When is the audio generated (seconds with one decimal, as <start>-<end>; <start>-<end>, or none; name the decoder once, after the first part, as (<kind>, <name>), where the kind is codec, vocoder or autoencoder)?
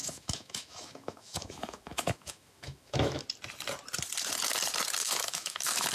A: 0.0-3.2 (autoencoder, DAC-VAE); 5.0-5.9